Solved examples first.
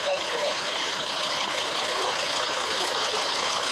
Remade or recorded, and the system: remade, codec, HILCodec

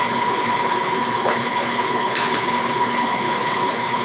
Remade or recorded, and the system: remade, codec, HILCodec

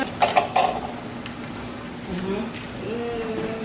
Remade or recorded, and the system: recorded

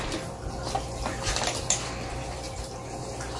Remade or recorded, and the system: recorded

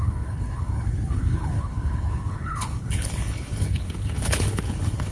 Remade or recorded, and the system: remade, codec, HILCodec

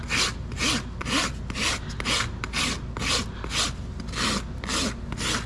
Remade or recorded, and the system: recorded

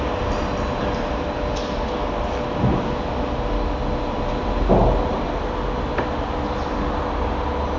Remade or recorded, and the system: recorded